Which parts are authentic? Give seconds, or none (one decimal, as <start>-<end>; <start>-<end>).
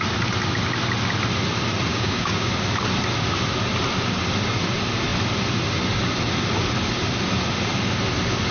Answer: 0.0-1.9; 2.5-8.5